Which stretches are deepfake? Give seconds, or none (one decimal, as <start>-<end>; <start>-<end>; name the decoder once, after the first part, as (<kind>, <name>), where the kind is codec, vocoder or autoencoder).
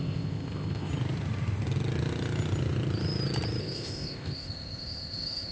0.0-0.9 (codec, ZipCodec); 3.6-5.5